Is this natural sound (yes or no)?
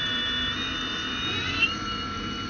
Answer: no